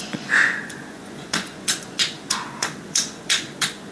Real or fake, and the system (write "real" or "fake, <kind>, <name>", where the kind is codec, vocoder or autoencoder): fake, vocoder, Vocos